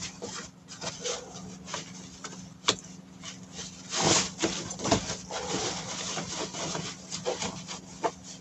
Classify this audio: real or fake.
real